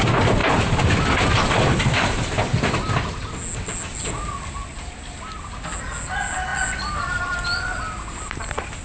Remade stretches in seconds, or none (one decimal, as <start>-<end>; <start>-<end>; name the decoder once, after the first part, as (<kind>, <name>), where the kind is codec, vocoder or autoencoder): none